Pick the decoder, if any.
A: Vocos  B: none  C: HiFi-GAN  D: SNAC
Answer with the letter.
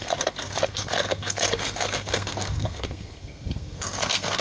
D